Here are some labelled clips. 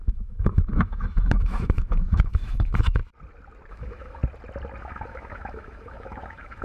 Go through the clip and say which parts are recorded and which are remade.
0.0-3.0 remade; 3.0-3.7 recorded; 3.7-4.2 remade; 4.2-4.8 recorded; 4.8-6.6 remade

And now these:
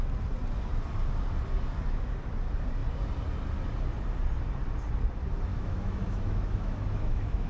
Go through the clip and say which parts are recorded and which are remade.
0.0-5.5 recorded; 5.5-7.5 remade

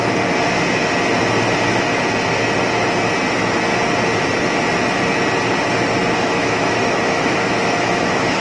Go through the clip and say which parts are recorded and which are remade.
0.0-6.0 recorded; 6.0-8.4 remade

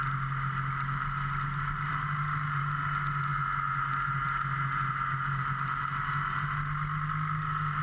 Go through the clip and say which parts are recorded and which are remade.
0.0-7.8 recorded

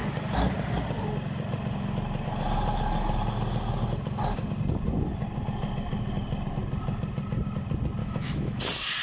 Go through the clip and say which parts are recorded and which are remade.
0.0-8.0 recorded; 8.0-8.6 remade; 8.6-9.0 recorded

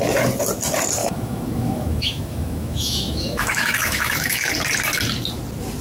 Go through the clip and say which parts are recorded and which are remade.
0.0-1.0 recorded; 1.0-4.5 remade; 4.5-5.8 recorded

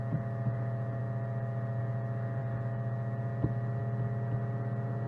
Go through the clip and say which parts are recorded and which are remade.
0.0-5.1 recorded

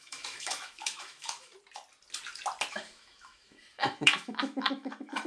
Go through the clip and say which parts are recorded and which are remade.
0.0-1.5 remade; 1.5-2.7 recorded; 2.7-5.3 remade